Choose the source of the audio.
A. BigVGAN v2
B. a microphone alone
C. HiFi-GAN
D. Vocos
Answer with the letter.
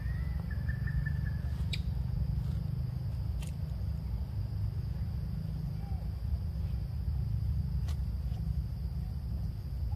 B